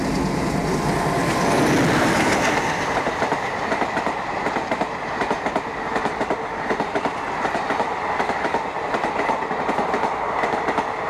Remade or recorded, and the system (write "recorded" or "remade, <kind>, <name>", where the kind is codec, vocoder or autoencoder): recorded